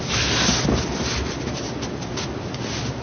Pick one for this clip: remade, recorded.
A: recorded